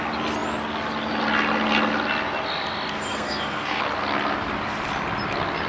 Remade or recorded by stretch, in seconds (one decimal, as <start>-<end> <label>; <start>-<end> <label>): 0.0-3.1 recorded; 3.1-3.8 remade; 3.8-5.7 recorded